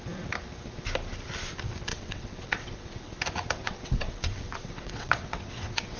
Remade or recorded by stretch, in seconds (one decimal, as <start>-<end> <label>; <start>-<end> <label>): 0.0-1.9 recorded; 1.9-3.1 remade; 3.1-3.6 recorded; 3.6-6.0 remade